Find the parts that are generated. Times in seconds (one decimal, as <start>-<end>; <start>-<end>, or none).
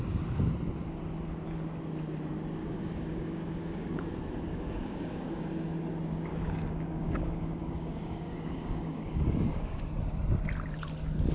2.6-4.0; 4.5-5.5; 6.3-9.8